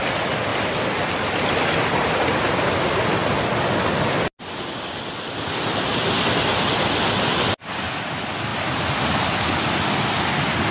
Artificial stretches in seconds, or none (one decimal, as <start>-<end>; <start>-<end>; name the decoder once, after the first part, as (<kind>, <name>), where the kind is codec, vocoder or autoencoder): none